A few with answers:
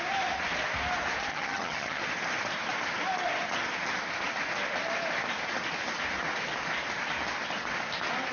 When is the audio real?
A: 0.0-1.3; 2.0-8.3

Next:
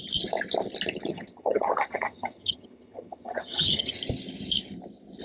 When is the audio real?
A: 0.0-1.1; 4.0-5.2